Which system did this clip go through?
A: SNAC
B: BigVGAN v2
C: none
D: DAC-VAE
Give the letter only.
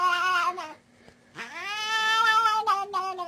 C